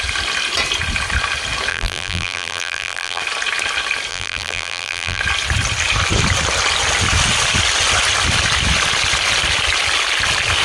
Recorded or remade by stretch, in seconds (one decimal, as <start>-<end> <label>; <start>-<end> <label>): 0.0-1.7 recorded; 1.7-3.2 remade; 3.2-4.1 recorded; 4.1-5.2 remade; 5.2-10.6 recorded